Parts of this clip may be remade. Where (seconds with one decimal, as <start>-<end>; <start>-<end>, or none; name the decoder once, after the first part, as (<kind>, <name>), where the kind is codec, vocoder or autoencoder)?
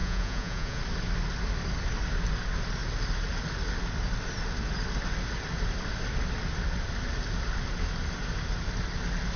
0.0-0.8 (vocoder, Vocos)